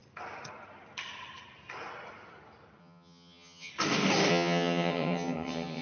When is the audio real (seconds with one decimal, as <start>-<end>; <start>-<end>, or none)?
0.0-2.8; 3.7-4.3

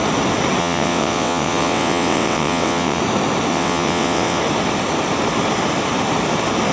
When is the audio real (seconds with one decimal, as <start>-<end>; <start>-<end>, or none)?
0.0-0.6; 3.0-3.5; 4.4-6.7

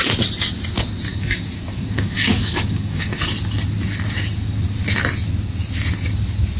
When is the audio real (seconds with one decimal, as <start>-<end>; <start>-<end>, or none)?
0.0-1.1; 3.2-6.6

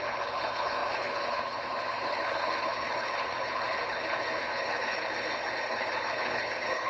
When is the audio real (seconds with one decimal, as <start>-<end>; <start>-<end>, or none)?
none

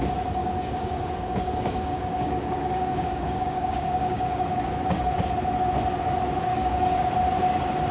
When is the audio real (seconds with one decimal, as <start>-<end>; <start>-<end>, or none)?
0.0-0.4; 5.1-6.5; 7.0-7.9

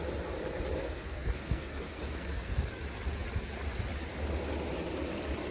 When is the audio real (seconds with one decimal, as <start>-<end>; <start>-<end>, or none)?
0.0-0.8; 2.8-5.5

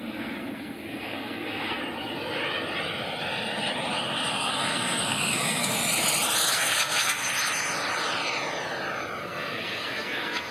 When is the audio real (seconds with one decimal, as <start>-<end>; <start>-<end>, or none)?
1.8-4.3; 5.8-6.5; 7.2-9.2